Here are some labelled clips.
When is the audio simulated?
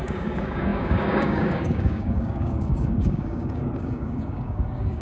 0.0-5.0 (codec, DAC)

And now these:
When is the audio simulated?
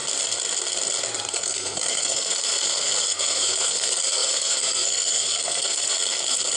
1.3-6.6 (codec, SNAC)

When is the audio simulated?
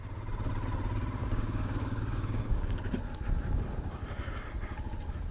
1.2-2.8 (codec, DAC)